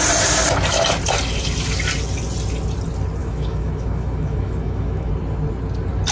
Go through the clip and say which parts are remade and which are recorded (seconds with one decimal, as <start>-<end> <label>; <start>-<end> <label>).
0.0-3.2 recorded; 3.2-5.1 remade; 5.1-6.1 recorded